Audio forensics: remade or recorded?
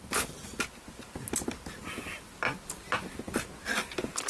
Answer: recorded